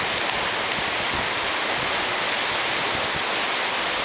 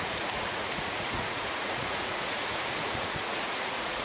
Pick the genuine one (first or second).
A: first